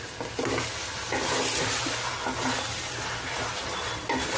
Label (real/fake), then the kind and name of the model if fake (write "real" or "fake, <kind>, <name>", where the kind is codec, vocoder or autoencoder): real